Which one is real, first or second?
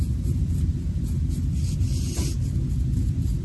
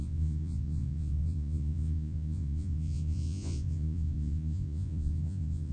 first